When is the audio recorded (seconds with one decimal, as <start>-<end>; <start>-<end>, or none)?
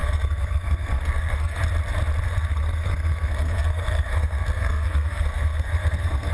1.6-2.3